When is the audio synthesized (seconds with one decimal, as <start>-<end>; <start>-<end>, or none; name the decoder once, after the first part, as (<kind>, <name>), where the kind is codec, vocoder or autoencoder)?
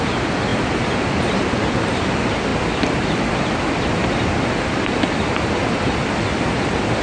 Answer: 0.5-1.3 (vocoder, BigVGAN v2); 2.5-5.6